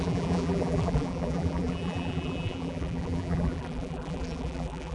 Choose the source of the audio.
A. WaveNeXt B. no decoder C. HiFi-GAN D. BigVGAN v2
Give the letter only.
D